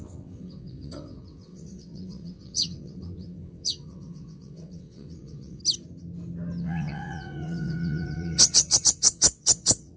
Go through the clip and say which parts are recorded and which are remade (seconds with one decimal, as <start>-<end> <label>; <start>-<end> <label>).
0.0-5.6 remade; 5.6-6.6 recorded; 6.6-10.0 remade